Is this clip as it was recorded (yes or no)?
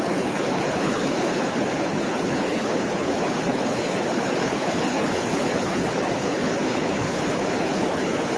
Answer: no